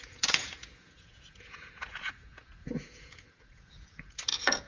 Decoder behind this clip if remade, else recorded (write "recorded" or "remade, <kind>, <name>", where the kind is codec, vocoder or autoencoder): remade, vocoder, Vocos